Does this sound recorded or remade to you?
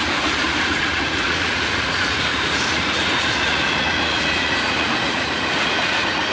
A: remade